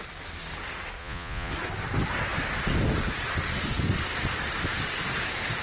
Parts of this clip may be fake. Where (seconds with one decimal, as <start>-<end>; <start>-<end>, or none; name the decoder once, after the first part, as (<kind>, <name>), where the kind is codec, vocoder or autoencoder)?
1.0-1.5 (vocoder, Vocos)